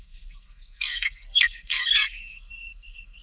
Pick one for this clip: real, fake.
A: fake